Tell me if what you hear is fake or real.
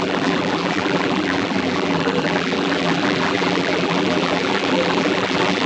fake